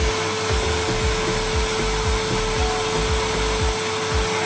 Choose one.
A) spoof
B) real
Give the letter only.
B